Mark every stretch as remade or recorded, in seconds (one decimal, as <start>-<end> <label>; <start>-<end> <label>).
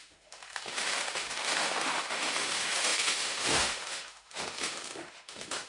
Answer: 0.0-5.7 remade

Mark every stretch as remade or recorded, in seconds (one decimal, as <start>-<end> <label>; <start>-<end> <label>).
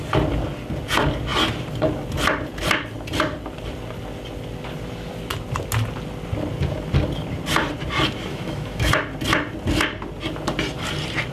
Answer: 0.0-8.3 recorded; 8.3-8.9 remade; 8.9-11.3 recorded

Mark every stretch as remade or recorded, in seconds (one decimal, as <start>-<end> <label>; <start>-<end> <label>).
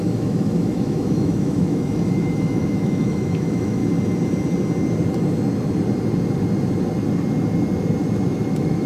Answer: 0.0-3.8 remade; 3.8-8.5 recorded; 8.5-8.9 remade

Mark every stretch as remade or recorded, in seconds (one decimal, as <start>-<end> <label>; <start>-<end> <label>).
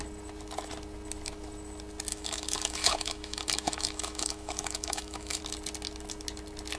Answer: 0.0-2.1 recorded; 2.1-5.4 remade; 5.4-6.8 recorded